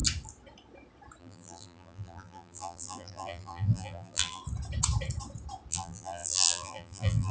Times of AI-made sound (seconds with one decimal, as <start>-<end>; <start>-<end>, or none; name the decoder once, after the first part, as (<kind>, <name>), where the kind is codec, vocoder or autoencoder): 1.2-4.4 (vocoder, BigVGAN v2); 5.7-7.3